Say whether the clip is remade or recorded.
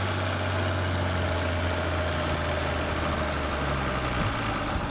recorded